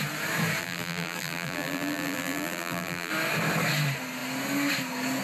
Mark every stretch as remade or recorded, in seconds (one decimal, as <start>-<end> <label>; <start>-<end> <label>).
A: 0.0-0.6 recorded; 0.6-3.1 remade; 3.1-5.2 recorded